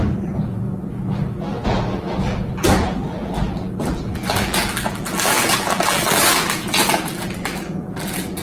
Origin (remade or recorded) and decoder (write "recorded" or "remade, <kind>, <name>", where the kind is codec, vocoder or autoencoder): remade, vocoder, BigVGAN v2